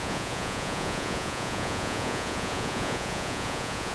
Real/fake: fake